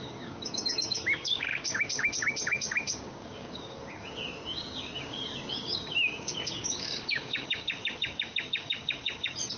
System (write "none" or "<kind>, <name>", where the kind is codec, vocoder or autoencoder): codec, DAC